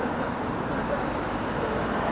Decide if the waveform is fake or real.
real